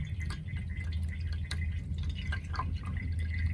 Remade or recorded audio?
recorded